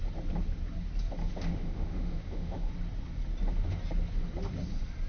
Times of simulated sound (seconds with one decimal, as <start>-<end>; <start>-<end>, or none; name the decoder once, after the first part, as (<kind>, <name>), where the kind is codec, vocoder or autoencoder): 1.2-2.7 (autoencoder, DAC-VAE)